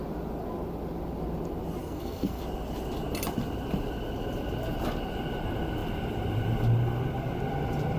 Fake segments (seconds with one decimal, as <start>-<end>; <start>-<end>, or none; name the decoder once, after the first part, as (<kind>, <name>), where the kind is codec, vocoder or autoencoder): 1.8-2.4 (codec, SNAC)